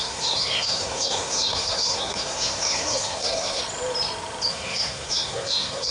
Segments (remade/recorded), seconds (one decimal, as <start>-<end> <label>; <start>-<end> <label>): 0.0-3.6 remade; 3.6-4.5 recorded; 4.5-5.9 remade